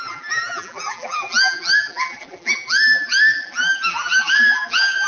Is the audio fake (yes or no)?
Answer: yes